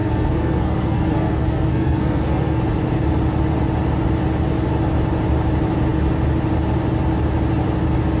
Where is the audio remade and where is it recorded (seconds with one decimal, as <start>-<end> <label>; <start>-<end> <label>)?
0.0-2.6 remade; 2.6-8.2 recorded